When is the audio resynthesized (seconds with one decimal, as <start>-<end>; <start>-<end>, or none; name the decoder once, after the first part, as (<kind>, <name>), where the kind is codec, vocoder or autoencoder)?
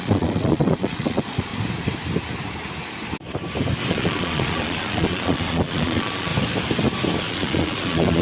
0.0-1.5 (vocoder, Vocos); 3.9-6.3; 7.2-8.2